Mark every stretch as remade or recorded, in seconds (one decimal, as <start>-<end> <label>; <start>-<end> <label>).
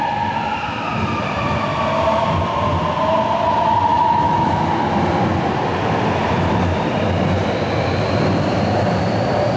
0.0-3.9 recorded; 3.9-4.6 remade; 4.6-9.6 recorded